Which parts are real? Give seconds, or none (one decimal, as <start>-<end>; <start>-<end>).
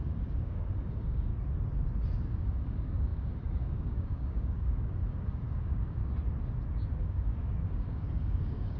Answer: 1.3-2.3; 6.0-7.0